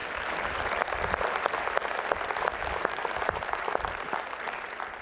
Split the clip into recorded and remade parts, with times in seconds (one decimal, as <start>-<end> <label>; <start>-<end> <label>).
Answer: 0.0-5.0 recorded